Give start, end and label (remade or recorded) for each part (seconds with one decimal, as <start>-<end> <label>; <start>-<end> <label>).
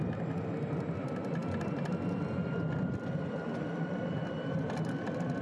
0.0-5.4 recorded